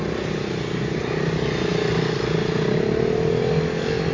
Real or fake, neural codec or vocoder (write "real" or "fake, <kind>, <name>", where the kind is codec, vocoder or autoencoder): real